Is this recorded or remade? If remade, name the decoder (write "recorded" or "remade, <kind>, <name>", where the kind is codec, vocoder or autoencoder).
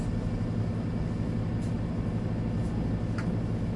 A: recorded